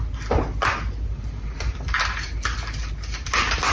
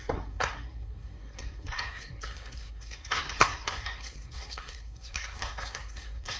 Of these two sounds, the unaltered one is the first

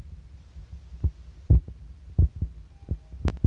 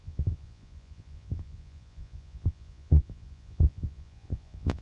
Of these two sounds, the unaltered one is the first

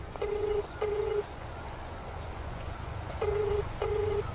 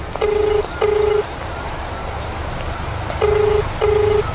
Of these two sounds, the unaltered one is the second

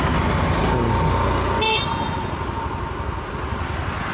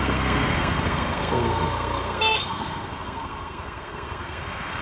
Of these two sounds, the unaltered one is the first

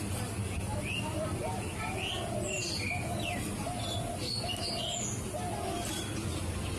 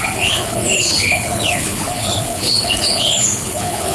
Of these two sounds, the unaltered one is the first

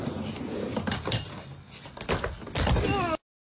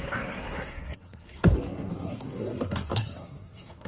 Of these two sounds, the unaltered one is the first